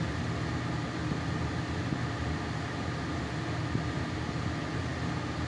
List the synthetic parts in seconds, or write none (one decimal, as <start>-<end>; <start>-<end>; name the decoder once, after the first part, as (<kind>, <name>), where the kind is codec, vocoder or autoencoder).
none